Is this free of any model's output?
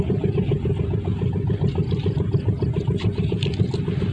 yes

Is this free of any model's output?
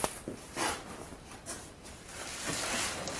yes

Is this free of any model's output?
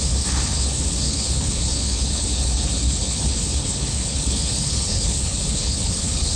no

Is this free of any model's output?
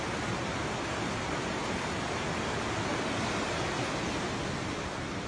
yes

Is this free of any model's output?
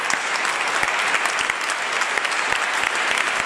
yes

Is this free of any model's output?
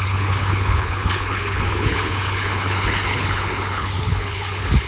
no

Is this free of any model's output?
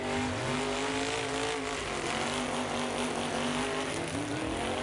yes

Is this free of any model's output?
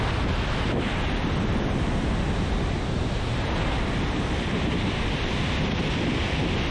yes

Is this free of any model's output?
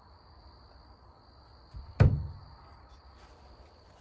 yes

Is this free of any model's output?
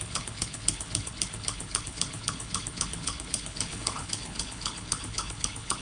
no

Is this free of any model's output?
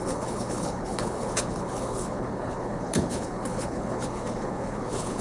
no